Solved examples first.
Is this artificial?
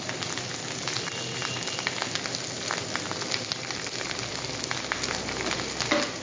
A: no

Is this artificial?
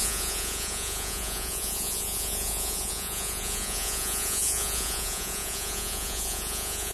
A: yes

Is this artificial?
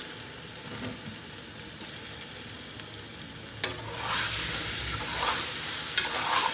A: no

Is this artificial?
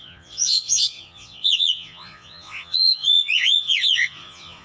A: yes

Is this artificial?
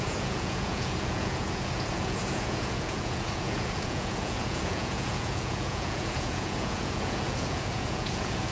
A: yes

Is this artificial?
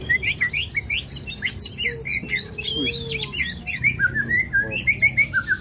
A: no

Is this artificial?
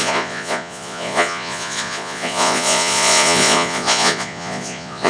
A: yes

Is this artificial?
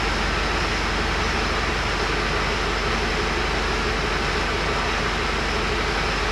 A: no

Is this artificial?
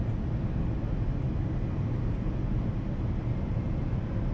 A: no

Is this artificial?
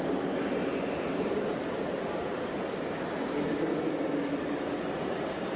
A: no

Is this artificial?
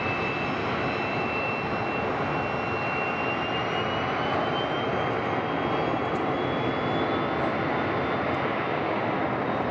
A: no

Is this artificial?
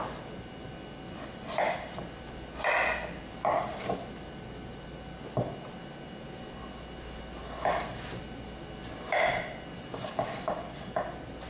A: no